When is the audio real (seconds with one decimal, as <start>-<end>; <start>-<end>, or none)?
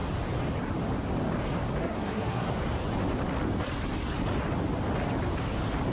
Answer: 0.0-1.8; 2.5-5.9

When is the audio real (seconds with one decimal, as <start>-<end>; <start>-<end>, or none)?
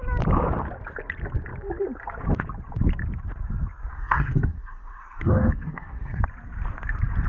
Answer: 0.0-3.9; 6.2-7.3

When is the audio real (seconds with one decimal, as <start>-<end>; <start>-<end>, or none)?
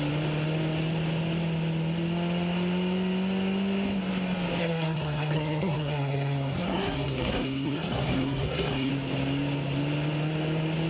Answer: 0.0-4.6; 8.9-10.9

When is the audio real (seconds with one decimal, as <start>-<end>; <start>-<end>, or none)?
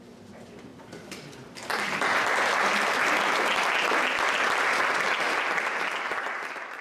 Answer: 0.0-6.8